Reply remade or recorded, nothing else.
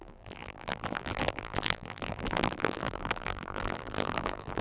remade